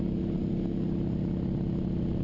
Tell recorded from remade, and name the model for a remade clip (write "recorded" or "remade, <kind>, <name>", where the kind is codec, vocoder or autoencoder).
recorded